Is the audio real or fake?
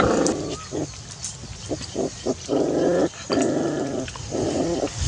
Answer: real